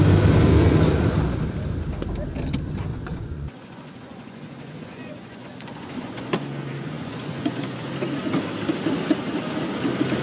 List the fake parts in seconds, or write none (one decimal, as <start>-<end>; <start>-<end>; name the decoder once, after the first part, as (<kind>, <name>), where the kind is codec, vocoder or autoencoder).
2.9-7.9 (vocoder, Vocos)